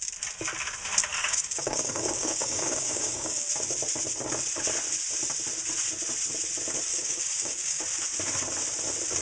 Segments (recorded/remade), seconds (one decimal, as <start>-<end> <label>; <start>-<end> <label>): 0.0-1.2 recorded; 1.2-3.5 remade; 3.5-6.9 recorded; 6.9-7.8 remade; 7.8-9.2 recorded